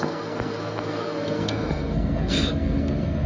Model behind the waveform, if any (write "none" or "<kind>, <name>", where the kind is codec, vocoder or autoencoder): codec, SNAC